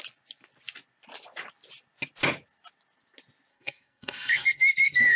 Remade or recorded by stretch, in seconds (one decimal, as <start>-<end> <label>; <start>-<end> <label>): 0.0-3.5 recorded; 3.5-5.2 remade